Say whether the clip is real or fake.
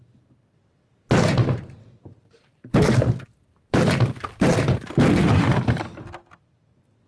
real